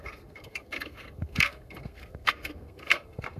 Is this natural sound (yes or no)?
no